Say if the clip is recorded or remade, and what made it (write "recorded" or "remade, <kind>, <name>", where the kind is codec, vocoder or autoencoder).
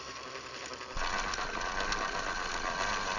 recorded